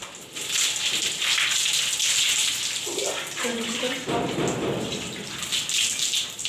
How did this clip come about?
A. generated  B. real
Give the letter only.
B